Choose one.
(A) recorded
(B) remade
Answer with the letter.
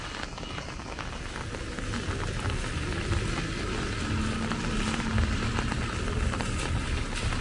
A